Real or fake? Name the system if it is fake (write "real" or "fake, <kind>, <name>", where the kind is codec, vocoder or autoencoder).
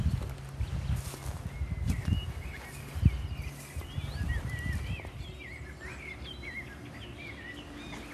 real